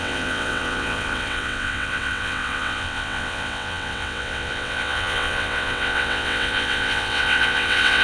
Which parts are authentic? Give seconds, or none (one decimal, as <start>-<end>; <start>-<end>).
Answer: none